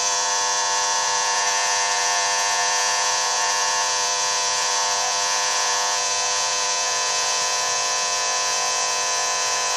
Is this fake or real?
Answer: fake